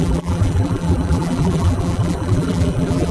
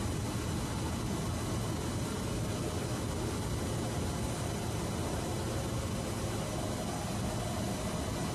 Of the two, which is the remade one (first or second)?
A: first